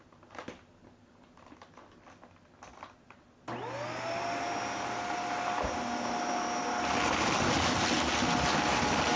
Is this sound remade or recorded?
recorded